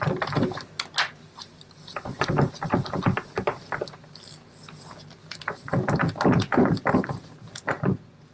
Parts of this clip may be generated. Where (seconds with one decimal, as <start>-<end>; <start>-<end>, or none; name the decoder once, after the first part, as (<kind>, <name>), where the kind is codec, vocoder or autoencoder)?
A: none